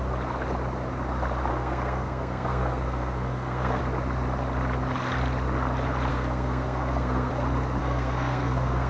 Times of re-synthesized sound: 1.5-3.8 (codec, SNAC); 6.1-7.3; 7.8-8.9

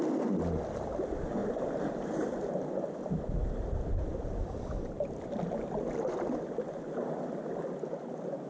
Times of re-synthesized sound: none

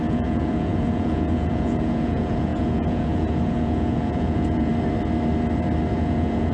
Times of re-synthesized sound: 0.0-4.7 (vocoder, Vocos); 5.9-6.5